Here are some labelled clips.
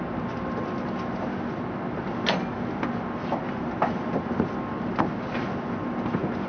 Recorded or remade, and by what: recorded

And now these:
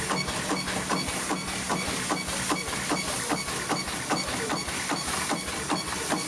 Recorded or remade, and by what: recorded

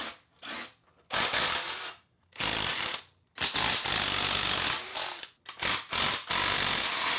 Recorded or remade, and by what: recorded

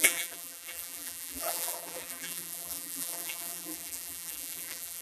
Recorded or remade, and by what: remade, vocoder, BigVGAN v2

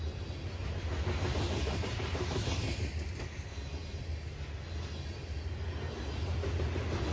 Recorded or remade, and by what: recorded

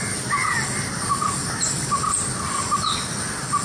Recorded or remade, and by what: recorded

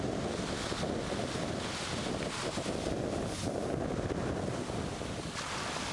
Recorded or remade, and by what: recorded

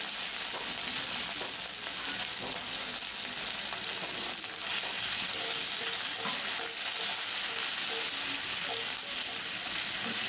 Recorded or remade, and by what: recorded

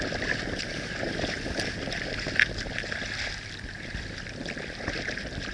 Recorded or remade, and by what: recorded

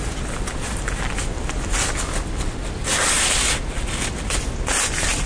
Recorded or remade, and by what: recorded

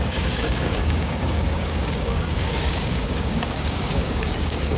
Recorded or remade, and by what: remade, codec, DAC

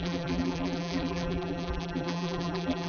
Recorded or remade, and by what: remade, vocoder, BigVGAN v2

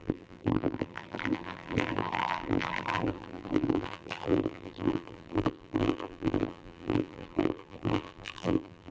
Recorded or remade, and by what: remade, vocoder, BigVGAN v2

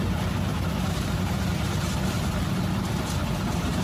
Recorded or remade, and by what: remade, vocoder, BigVGAN v2